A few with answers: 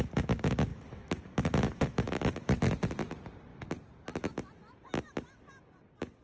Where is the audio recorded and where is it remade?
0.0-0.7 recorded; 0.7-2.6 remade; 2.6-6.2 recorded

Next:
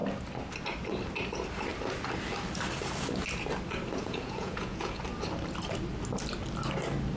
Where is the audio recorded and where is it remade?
0.0-4.0 recorded; 4.0-5.0 remade; 5.0-7.2 recorded

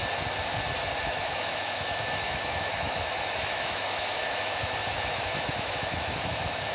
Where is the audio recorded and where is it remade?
0.0-1.0 recorded; 1.0-6.7 remade

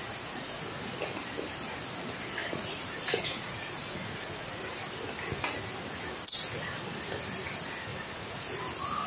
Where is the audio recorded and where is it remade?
0.0-0.6 remade; 0.6-2.4 recorded; 2.4-4.6 remade; 4.6-7.9 recorded; 7.9-8.6 remade; 8.6-9.1 recorded